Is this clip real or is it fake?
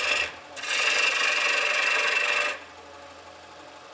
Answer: real